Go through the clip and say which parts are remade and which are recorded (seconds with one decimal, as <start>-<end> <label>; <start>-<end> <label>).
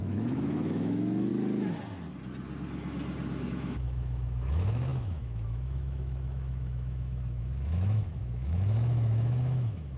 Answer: 0.0-1.3 remade; 1.3-3.5 recorded; 3.5-10.0 remade